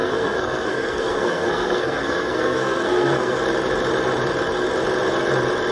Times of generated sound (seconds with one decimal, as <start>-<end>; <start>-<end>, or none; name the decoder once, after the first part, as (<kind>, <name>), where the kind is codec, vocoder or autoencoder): 0.0-3.4 (codec, SNAC)